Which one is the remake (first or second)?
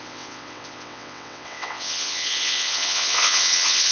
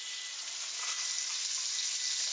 first